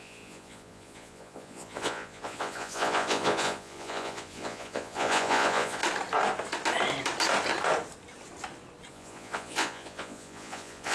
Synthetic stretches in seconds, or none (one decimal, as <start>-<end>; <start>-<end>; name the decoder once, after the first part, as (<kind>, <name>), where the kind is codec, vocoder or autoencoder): 0.0-5.8 (vocoder, Vocos); 8.9-10.9